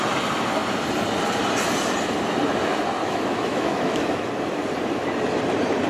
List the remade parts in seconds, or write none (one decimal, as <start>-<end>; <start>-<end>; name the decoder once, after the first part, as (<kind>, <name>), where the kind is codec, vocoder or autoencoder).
3.0-4.3 (autoencoder, DAC-VAE)